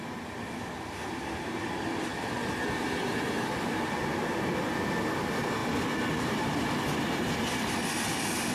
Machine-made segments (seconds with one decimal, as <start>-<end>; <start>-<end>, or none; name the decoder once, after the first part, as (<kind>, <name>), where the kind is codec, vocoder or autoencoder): none